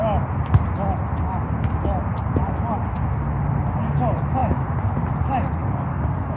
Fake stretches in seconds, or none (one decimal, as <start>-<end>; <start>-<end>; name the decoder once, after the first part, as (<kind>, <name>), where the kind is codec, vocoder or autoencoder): 5.6-6.4 (codec, DAC)